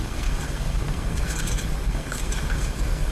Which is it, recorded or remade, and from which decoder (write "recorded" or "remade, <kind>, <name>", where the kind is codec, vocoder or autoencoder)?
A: remade, codec, SNAC